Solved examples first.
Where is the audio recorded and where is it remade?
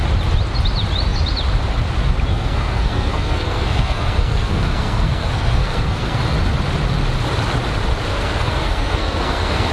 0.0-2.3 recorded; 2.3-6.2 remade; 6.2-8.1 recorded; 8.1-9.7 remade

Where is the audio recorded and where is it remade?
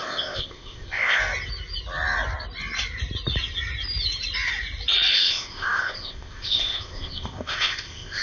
0.0-1.2 remade; 1.2-5.1 recorded; 5.1-8.2 remade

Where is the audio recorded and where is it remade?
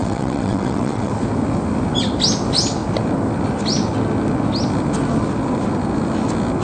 0.0-1.1 remade; 1.1-6.6 recorded